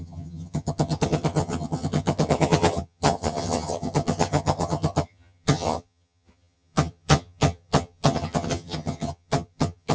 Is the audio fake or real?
fake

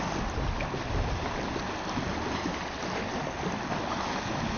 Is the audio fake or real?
real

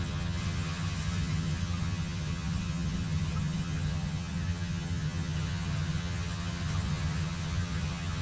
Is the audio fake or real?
fake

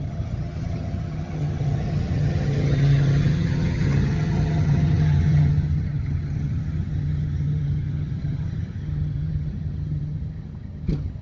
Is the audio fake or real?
fake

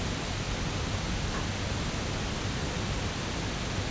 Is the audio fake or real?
real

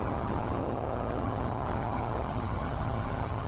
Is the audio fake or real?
fake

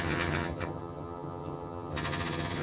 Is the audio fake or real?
fake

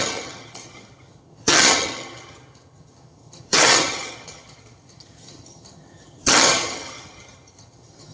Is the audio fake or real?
fake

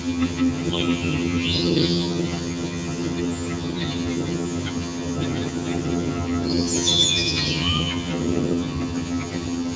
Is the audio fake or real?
fake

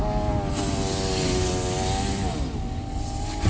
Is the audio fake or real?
real